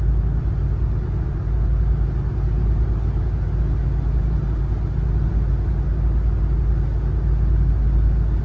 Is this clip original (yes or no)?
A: yes